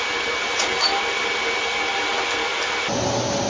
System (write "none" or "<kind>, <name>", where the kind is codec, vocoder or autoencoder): none